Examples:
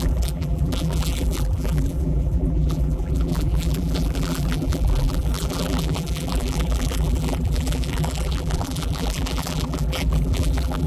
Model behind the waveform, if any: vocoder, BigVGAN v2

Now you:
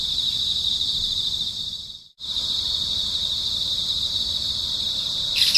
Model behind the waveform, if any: vocoder, BigVGAN v2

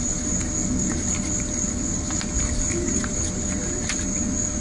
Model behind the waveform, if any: none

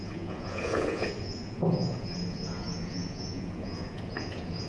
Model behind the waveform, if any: vocoder, Vocos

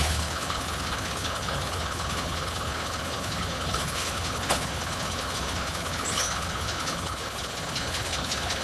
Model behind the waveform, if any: codec, HILCodec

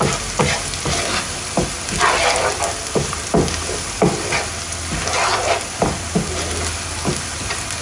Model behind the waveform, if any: none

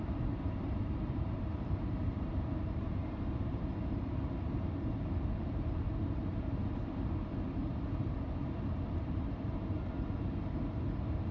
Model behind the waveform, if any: vocoder, BigVGAN v2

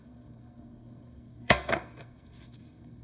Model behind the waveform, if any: codec, SNAC